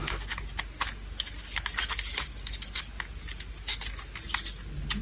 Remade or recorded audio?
recorded